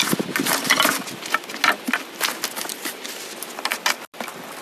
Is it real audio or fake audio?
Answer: real